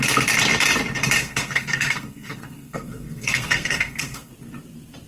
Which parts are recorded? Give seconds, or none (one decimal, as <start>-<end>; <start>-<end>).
0.0-1.2; 4.3-5.1